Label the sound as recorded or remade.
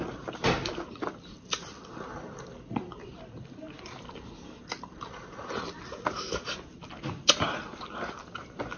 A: recorded